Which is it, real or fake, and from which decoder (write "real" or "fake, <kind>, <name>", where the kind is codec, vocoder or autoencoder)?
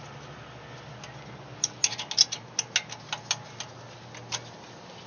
real